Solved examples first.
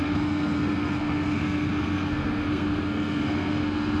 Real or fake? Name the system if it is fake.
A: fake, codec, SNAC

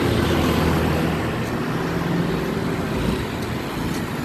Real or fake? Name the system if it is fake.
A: real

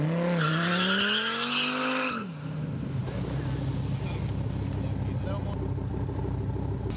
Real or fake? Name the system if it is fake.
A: real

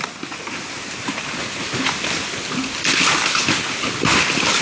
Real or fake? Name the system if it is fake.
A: real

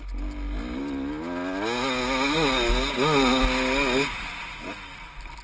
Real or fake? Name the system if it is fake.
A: real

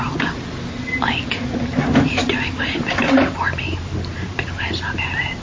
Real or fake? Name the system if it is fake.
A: real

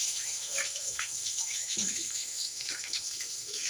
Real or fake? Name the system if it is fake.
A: fake, autoencoder, DAC-VAE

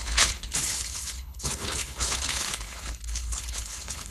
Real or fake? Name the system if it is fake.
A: fake, codec, HILCodec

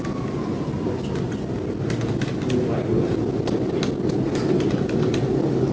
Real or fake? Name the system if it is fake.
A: real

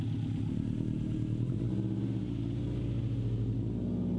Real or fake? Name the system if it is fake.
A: real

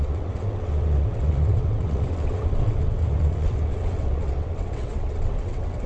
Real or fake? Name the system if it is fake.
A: fake, vocoder, WaveNeXt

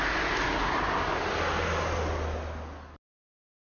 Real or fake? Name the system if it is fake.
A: real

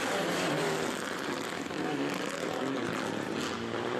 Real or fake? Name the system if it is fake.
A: real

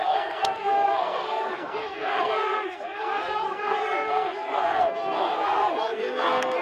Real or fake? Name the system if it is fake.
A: fake, codec, SNAC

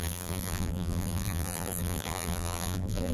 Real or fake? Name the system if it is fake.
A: fake, vocoder, BigVGAN v2